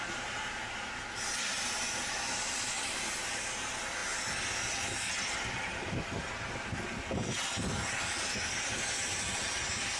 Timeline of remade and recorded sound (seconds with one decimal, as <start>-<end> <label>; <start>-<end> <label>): 0.0-10.0 recorded